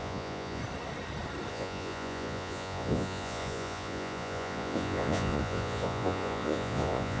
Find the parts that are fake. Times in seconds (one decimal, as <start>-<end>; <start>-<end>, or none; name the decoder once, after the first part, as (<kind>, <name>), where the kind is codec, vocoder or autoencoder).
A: 0.0-0.6 (vocoder, Vocos); 1.5-7.2